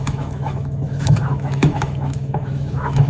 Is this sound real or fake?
fake